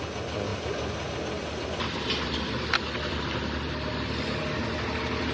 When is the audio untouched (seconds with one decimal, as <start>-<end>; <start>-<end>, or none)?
0.0-5.3